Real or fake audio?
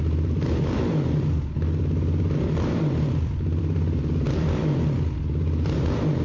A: fake